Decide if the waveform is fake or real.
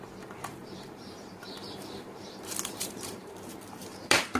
fake